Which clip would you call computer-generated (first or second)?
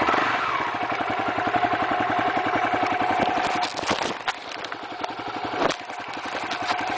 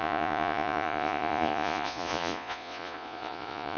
second